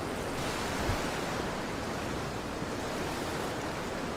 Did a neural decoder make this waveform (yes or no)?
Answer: no